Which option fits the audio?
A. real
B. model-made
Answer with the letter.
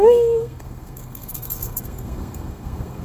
B